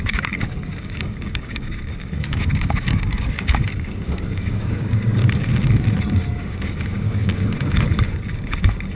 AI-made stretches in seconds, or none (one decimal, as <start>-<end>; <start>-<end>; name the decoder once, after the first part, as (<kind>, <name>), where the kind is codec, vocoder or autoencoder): 0.0-5.2 (codec, DAC); 6.4-8.9